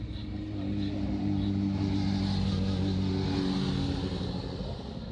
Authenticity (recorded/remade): recorded